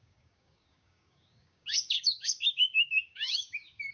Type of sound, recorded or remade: remade